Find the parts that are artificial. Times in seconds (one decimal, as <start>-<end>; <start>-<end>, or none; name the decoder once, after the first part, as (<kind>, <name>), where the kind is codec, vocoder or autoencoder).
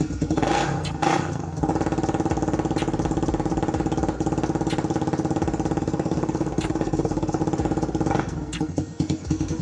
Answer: 0.0-1.7 (codec, SNAC); 5.8-7.4; 8.1-9.6